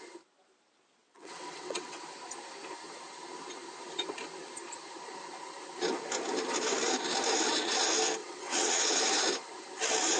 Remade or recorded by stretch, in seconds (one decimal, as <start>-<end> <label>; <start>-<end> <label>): 0.0-1.0 recorded; 1.0-2.0 remade; 2.0-8.2 recorded; 8.2-9.0 remade; 9.0-10.2 recorded